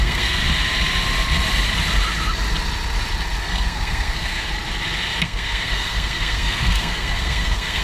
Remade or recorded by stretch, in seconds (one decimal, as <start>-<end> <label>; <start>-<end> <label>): 0.0-0.4 remade; 0.4-3.4 recorded; 3.4-4.5 remade; 4.5-5.2 recorded; 5.2-7.8 remade